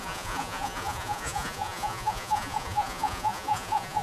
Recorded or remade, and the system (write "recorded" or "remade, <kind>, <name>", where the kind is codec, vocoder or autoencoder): remade, vocoder, Vocos